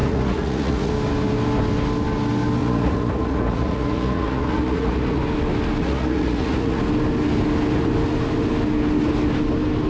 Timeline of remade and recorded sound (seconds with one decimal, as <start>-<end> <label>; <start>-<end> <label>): 0.0-0.9 remade; 0.9-2.6 recorded; 2.6-5.2 remade; 5.2-5.8 recorded; 5.8-6.8 remade; 6.8-9.9 recorded

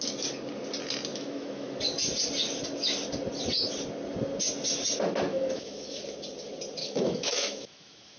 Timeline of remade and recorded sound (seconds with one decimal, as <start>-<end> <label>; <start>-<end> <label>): 0.0-1.1 recorded; 1.1-1.8 remade; 1.8-5.3 recorded; 5.3-6.0 remade; 6.0-6.8 recorded; 6.8-8.2 remade

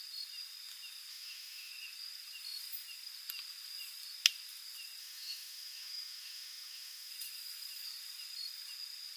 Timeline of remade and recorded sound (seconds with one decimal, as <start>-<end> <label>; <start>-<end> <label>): 0.0-1.1 recorded; 1.1-1.7 remade; 1.7-5.0 recorded; 5.0-7.1 remade; 7.1-9.2 recorded

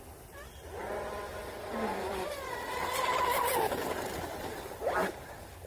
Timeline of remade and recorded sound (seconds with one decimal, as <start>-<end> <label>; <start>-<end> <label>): 0.0-5.7 recorded